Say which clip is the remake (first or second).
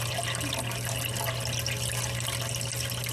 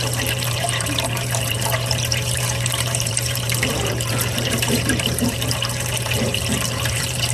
second